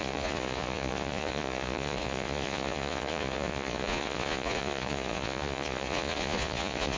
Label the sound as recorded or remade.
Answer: remade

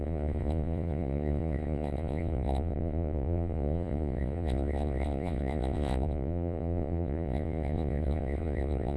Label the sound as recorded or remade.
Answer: remade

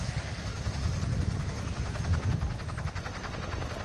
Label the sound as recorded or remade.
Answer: recorded